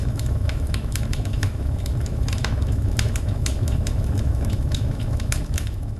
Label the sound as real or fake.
fake